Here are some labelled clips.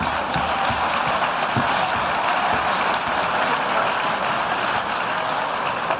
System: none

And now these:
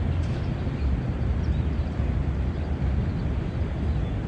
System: none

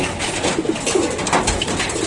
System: none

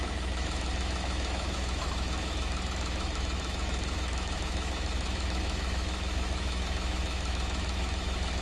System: autoencoder, DAC-VAE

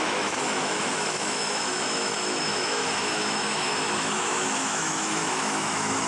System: autoencoder, DAC-VAE